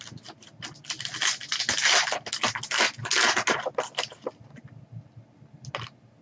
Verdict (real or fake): real